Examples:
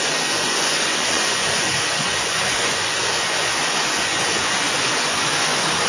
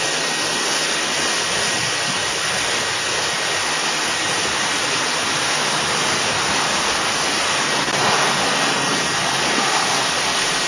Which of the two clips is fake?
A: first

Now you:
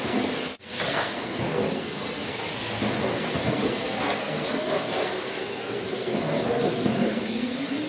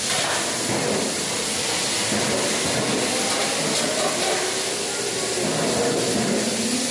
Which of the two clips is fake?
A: first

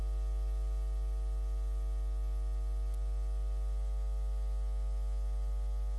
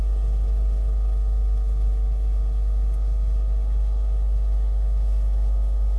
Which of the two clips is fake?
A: second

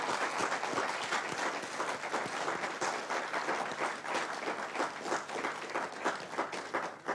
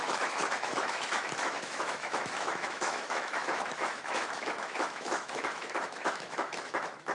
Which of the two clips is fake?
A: second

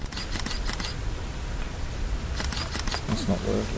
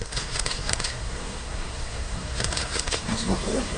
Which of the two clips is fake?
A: second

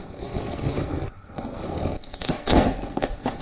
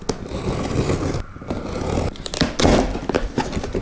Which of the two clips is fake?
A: first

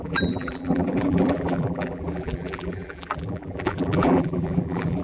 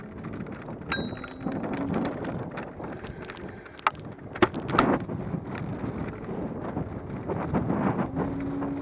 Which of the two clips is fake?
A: first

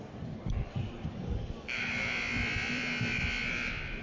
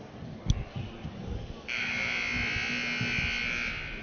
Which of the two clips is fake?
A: first